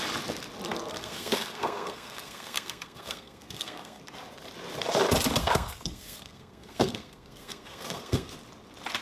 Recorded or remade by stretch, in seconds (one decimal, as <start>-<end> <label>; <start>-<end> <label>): 0.0-0.9 recorded; 0.9-4.0 remade; 4.0-5.4 recorded; 5.4-8.3 remade; 8.3-9.0 recorded